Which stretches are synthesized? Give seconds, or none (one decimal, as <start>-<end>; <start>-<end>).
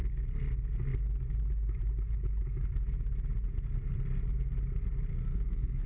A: 5.1-5.9